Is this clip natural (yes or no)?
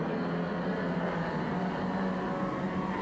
yes